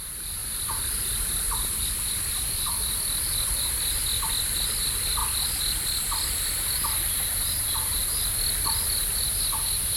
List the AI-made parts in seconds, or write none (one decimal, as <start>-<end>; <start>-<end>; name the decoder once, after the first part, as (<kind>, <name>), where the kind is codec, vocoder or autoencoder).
5.2-9.4 (vocoder, BigVGAN v2)

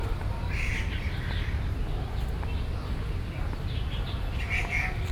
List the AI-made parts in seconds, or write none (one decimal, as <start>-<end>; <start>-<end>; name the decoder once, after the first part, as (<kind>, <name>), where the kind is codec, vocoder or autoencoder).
0.0-0.7 (vocoder, BigVGAN v2)

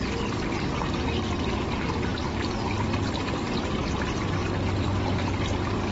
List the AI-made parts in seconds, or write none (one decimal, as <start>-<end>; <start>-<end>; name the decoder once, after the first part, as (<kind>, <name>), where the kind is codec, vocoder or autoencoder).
0.0-2.1 (vocoder, BigVGAN v2); 4.4-5.9

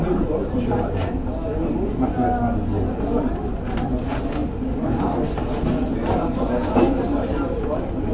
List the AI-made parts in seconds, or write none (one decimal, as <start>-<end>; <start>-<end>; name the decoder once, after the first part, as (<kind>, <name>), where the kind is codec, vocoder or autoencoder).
none

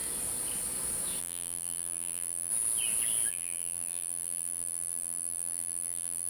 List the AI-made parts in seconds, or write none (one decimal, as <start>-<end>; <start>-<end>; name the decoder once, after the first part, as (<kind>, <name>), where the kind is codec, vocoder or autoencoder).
1.2-2.5 (vocoder, BigVGAN v2); 3.3-6.3

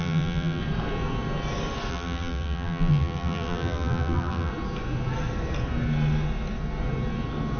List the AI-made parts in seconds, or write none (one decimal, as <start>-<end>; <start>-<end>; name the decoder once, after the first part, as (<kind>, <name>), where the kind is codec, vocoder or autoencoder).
0.0-0.6 (vocoder, BigVGAN v2); 1.9-4.5

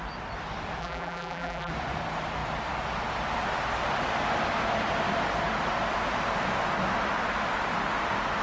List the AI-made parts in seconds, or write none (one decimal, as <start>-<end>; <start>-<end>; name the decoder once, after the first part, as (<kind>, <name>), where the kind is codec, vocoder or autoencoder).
0.8-1.7 (vocoder, BigVGAN v2)

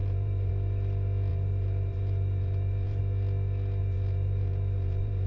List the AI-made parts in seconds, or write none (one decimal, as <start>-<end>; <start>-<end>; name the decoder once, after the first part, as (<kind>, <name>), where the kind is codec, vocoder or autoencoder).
0.0-0.5 (vocoder, BigVGAN v2); 1.3-3.0; 3.8-5.3